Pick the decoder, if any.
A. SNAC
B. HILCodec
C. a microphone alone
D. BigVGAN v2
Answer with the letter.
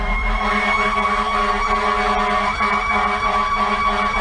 D